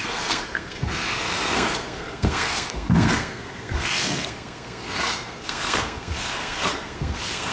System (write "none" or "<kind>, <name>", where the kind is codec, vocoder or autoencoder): codec, SNAC